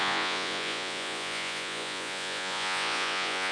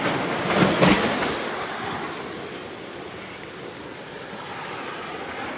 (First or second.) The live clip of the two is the second